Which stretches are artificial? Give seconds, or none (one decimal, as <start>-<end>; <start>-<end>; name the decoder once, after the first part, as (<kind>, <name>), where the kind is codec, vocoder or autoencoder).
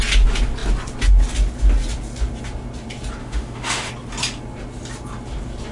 3.2-3.9 (autoencoder, DAC-VAE)